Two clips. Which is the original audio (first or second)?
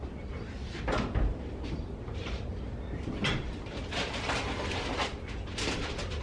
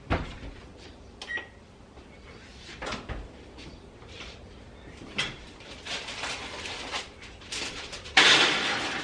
first